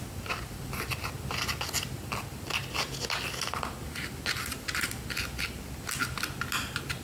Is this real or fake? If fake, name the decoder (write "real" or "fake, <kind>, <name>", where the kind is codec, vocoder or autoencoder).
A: real